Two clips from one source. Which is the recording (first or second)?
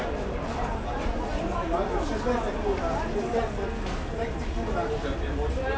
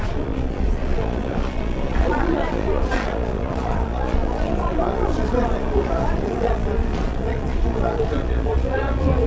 first